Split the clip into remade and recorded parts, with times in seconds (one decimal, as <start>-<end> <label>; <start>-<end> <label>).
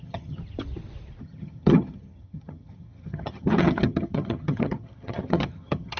0.0-0.4 remade; 0.4-1.2 recorded; 1.2-6.0 remade